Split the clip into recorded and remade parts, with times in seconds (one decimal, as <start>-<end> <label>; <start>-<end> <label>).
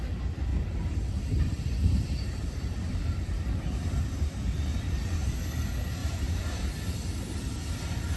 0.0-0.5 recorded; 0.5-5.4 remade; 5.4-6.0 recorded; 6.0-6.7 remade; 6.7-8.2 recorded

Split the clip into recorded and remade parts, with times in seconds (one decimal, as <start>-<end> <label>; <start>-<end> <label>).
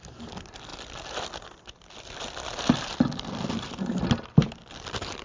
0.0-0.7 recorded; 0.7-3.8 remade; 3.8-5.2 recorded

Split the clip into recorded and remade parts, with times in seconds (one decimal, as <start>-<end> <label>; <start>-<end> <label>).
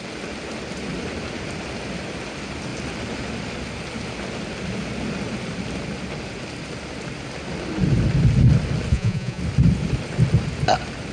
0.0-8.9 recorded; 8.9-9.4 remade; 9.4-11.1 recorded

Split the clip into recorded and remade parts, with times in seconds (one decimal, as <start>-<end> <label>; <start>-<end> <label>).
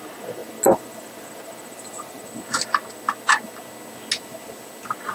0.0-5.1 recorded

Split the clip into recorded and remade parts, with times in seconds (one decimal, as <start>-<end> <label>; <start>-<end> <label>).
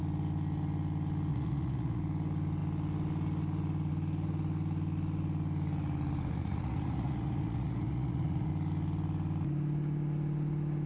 0.0-1.3 recorded; 1.3-2.0 remade; 2.0-6.4 recorded; 6.4-8.5 remade; 8.5-10.9 recorded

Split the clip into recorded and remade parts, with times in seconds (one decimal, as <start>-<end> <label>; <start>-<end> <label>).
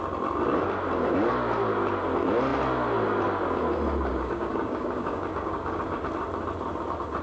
0.0-4.1 recorded; 4.1-6.1 remade; 6.1-7.2 recorded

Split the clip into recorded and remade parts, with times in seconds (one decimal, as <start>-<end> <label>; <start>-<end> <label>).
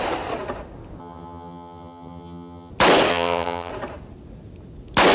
0.0-1.0 recorded; 1.0-2.7 remade; 2.7-3.1 recorded; 3.1-3.7 remade; 3.7-5.1 recorded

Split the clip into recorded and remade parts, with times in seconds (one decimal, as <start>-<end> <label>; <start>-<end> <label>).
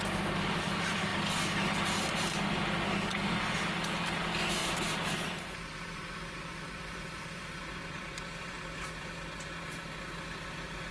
0.0-4.6 recorded; 4.6-9.1 remade; 9.1-10.9 recorded